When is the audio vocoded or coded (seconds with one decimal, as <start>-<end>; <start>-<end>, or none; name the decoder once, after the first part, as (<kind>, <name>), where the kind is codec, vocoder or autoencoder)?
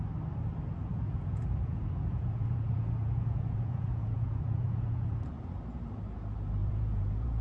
0.9-5.3 (vocoder, Vocos); 6.6-7.4